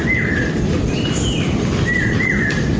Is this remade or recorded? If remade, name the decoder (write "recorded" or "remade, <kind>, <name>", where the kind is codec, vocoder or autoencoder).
recorded